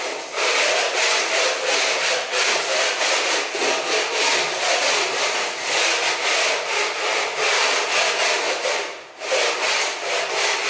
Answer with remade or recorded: recorded